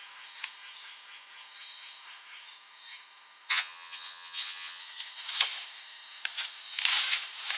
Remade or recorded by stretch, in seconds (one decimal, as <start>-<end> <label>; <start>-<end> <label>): 0.0-3.5 recorded; 3.5-4.8 remade; 4.8-7.6 recorded